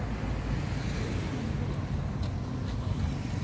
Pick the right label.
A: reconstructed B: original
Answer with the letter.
B